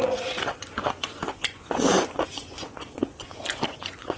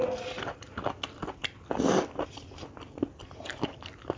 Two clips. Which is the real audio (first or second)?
second